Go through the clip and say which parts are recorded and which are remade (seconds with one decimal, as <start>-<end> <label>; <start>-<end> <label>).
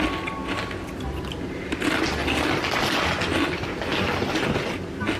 0.0-5.2 recorded